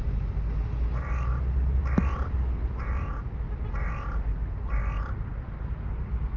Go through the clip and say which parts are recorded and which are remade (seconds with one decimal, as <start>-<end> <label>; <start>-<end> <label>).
0.0-6.4 recorded